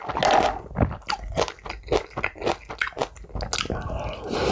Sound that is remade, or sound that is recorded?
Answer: recorded